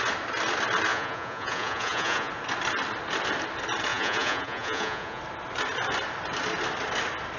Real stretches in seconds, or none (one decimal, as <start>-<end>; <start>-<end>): 0.0-0.9; 2.3-3.9; 5.2-7.4